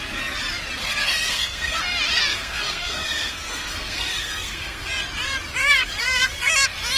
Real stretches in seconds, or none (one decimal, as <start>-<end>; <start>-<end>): 0.0-0.8; 1.8-2.3; 4.9-5.6; 6.5-7.0